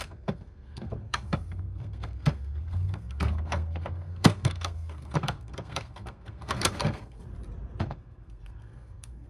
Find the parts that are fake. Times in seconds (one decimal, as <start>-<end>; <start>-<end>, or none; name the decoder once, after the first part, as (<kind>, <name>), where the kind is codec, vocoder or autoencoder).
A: 0.0-7.2 (codec, SNAC); 7.8-9.3